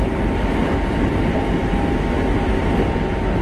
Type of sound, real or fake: real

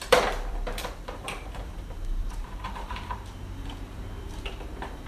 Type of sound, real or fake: fake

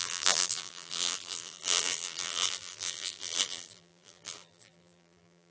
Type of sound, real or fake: fake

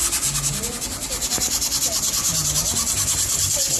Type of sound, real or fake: real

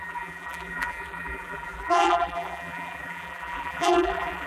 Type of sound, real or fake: fake